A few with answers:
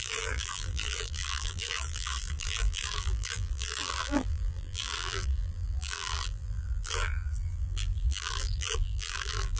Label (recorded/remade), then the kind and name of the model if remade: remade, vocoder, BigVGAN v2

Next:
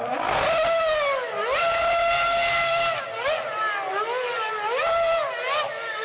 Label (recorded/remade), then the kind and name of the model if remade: recorded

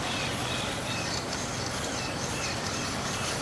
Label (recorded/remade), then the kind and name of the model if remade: recorded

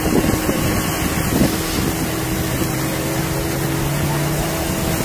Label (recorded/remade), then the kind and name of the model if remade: recorded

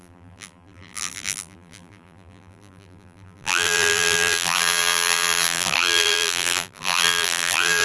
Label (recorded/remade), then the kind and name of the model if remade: remade, vocoder, BigVGAN v2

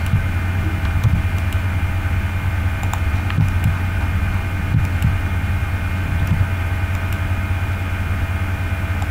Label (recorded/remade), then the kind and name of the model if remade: recorded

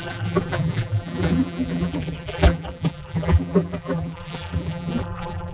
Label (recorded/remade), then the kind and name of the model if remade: remade, vocoder, BigVGAN v2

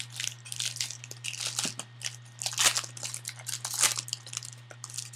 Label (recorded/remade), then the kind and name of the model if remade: recorded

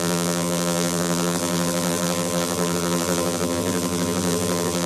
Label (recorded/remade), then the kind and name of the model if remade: remade, vocoder, BigVGAN v2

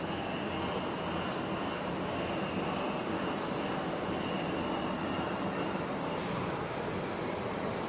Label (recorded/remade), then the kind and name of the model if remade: recorded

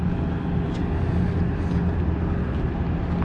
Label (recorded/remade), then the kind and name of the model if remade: recorded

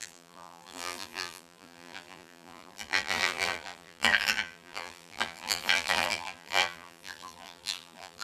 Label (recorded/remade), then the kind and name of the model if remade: remade, vocoder, BigVGAN v2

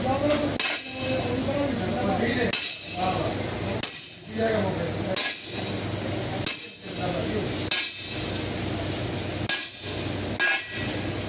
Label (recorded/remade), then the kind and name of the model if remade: recorded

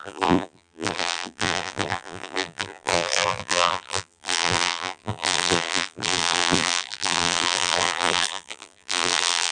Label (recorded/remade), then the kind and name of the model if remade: remade, vocoder, BigVGAN v2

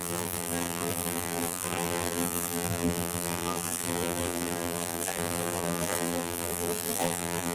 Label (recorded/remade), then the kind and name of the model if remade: remade, vocoder, BigVGAN v2